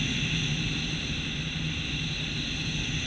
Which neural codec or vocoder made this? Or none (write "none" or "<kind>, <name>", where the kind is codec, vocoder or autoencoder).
none